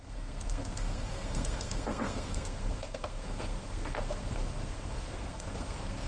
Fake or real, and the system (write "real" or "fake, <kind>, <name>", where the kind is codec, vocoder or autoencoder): fake, codec, SNAC